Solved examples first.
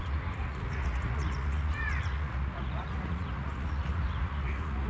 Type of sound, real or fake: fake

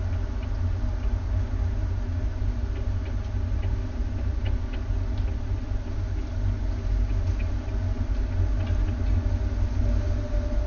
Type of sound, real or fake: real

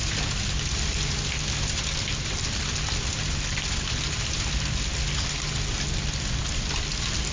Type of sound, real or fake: real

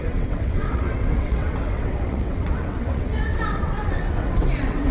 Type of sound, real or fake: fake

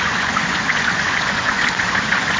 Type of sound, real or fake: fake